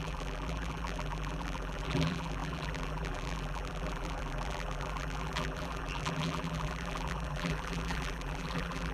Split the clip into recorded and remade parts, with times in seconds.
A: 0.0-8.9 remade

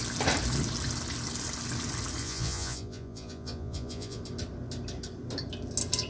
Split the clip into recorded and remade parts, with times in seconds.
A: 0.0-2.2 recorded; 2.2-4.2 remade; 4.2-6.1 recorded